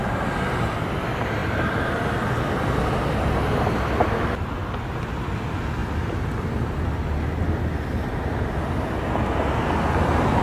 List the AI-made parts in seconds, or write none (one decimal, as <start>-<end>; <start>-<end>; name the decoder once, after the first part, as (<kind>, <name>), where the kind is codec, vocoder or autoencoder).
1.4-3.2 (vocoder, BigVGAN v2)